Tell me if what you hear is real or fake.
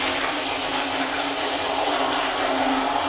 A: real